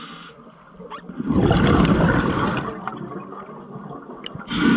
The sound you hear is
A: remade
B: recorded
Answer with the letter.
B